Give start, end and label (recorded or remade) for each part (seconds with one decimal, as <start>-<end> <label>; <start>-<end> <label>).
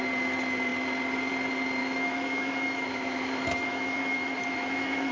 0.0-1.8 recorded; 1.8-5.1 remade